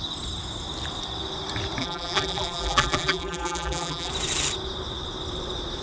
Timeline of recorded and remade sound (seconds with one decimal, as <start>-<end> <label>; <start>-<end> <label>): 0.0-1.8 recorded; 1.8-4.1 remade; 4.1-5.8 recorded